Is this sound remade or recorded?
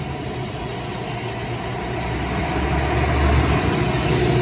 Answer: recorded